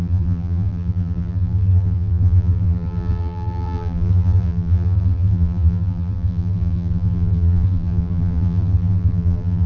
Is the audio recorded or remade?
remade